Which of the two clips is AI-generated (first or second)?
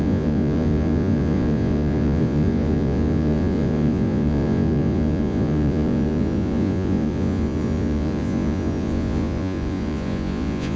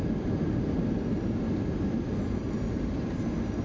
first